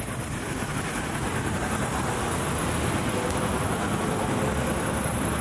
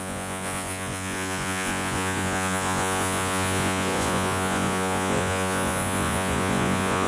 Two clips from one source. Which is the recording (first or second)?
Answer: first